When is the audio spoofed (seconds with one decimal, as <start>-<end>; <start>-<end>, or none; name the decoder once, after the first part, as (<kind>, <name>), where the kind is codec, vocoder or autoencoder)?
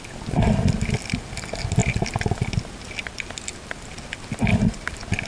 none